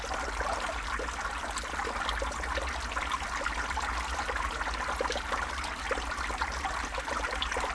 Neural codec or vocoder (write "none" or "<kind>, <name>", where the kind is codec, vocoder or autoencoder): none